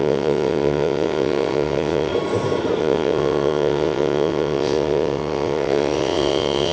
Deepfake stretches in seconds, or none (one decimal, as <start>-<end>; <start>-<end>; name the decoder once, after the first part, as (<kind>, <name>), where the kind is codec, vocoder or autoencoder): 0.0-2.1 (vocoder, WaveNeXt); 2.8-6.7